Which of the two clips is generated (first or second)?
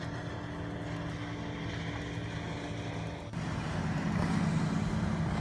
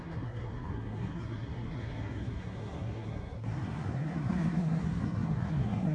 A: second